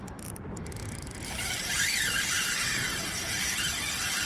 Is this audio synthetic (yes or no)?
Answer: yes